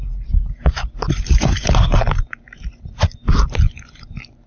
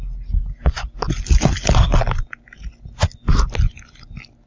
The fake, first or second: first